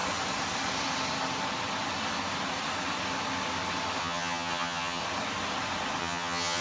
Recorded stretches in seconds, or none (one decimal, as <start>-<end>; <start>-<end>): 0.0-4.0; 5.0-6.0